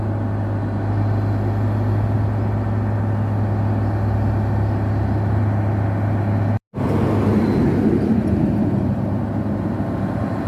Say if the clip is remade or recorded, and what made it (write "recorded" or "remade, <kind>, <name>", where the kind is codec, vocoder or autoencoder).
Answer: recorded